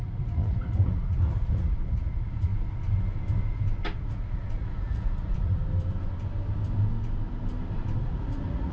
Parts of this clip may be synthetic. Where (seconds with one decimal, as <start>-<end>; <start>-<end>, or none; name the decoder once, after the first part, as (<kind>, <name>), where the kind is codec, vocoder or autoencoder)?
0.0-2.5 (vocoder, Vocos); 4.0-5.6; 8.0-8.7